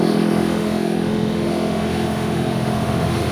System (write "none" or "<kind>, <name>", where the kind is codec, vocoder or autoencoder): autoencoder, DAC-VAE